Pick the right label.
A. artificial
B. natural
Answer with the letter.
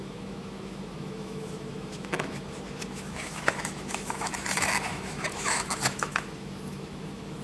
A